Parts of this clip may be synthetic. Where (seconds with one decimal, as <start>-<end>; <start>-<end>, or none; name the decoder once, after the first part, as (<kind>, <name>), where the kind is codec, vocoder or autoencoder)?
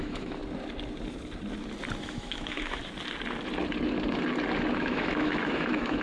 0.0-0.4 (autoencoder, DAC-VAE); 2.0-2.8; 4.8-6.0